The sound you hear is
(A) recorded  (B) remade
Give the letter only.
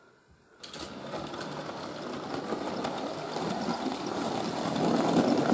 A